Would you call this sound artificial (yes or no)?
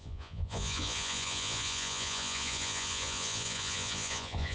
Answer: yes